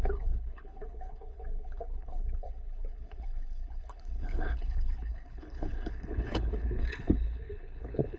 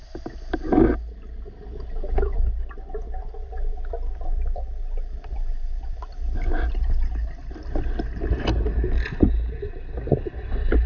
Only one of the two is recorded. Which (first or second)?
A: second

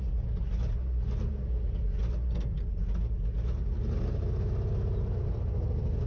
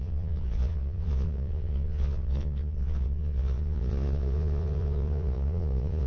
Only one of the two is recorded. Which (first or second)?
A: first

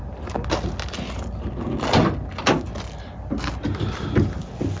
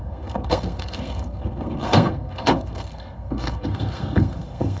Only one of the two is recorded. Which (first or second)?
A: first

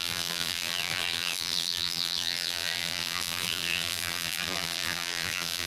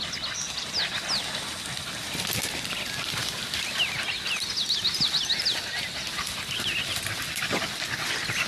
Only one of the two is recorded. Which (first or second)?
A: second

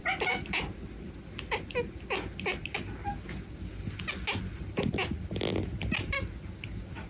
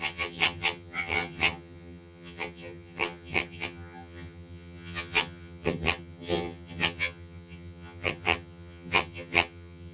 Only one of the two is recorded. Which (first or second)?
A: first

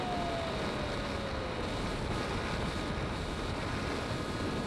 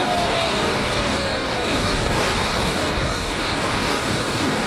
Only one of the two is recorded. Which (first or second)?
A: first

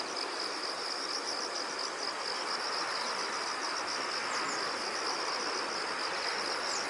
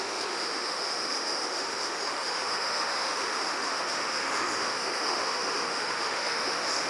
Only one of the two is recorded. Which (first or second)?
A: first